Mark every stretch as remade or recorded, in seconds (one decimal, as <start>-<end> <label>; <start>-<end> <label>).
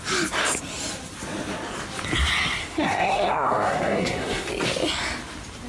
0.0-2.6 recorded; 2.6-4.5 remade; 4.5-5.7 recorded